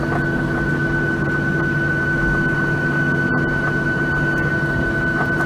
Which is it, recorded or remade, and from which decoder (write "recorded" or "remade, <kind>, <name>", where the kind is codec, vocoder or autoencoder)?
recorded